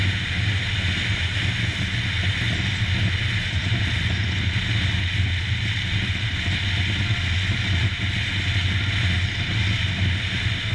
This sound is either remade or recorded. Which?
recorded